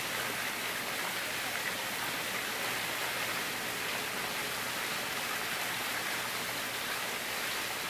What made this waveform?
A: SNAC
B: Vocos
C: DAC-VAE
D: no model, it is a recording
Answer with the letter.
D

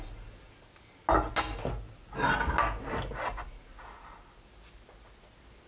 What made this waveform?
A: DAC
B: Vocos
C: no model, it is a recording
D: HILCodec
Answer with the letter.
C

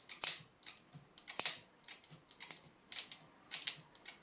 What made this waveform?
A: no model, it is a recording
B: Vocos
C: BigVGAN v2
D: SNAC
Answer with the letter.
A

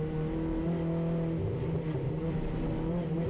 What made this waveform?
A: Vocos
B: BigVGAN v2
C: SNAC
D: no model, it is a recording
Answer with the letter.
D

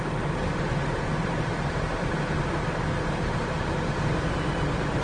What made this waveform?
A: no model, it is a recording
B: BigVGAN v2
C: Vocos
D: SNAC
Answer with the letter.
A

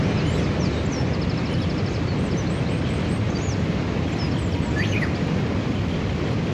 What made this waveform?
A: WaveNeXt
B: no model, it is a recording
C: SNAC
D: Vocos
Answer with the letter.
B